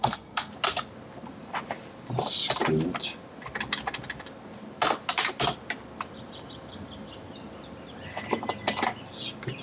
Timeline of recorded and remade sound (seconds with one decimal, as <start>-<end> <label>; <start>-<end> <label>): 0.0-0.5 remade; 0.5-9.6 recorded